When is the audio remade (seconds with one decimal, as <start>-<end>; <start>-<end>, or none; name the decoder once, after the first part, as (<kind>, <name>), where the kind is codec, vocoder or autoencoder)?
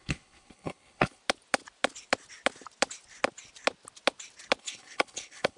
0.0-1.2 (codec, HILCodec); 4.6-5.6